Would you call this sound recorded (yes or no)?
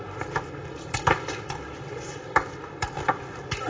yes